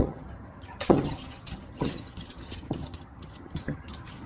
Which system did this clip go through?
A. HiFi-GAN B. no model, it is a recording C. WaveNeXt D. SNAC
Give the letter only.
A